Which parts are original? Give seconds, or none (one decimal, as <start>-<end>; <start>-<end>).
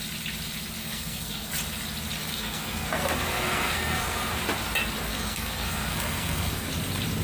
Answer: 0.0-0.8; 1.5-2.2; 4.4-5.1; 6.7-7.2